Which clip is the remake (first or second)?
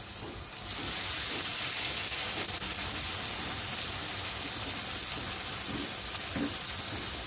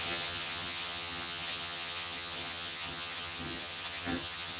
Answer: second